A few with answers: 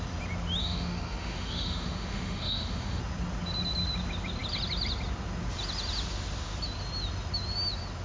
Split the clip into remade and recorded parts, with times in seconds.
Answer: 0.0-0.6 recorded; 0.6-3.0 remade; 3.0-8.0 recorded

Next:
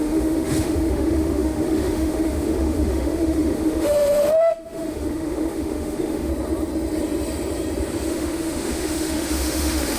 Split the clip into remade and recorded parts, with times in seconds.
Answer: 0.0-6.3 remade; 6.3-8.1 recorded; 8.1-10.0 remade